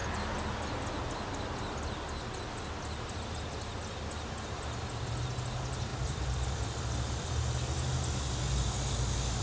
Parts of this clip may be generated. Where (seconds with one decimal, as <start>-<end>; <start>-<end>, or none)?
5.9-7.4